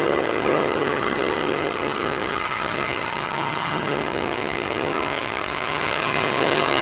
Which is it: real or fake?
fake